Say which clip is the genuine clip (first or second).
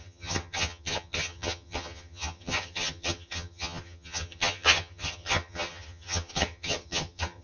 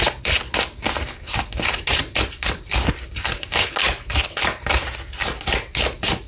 second